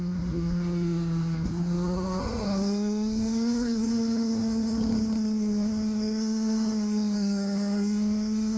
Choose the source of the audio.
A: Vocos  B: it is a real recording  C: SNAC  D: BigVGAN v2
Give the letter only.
C